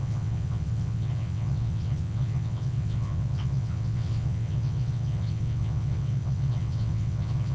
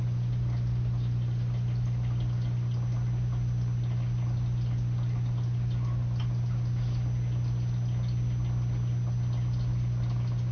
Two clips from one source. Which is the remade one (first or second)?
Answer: first